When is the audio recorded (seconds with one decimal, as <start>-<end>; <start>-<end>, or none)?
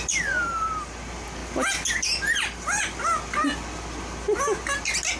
0.0-5.2